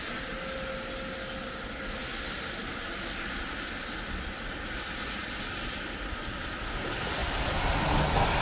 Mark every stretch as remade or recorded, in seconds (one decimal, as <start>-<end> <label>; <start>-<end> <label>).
0.0-8.4 recorded